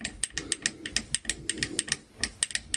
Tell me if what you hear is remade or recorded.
recorded